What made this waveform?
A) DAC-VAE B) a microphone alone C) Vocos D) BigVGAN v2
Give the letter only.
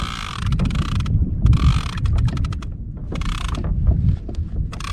B